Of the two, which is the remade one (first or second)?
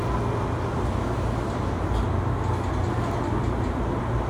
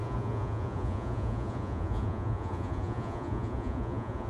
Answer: second